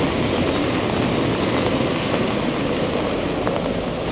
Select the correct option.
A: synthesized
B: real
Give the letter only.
B